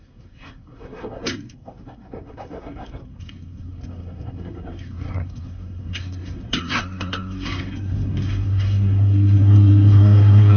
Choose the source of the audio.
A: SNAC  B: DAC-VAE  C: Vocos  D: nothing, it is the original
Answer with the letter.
A